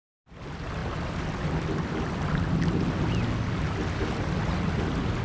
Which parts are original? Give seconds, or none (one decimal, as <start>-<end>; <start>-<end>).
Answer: 0.0-5.2